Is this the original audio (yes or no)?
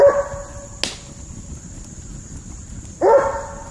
yes